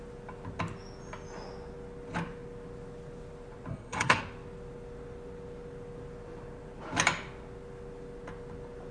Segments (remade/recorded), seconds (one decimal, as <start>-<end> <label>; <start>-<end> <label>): 0.0-3.7 recorded; 3.7-4.2 remade; 4.2-8.9 recorded